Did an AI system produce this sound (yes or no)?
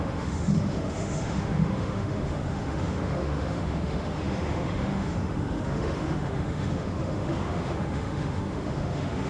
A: yes